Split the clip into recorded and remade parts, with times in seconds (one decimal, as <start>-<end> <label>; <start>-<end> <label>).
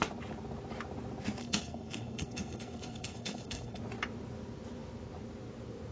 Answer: 0.0-1.4 recorded; 1.4-3.8 remade; 3.8-5.9 recorded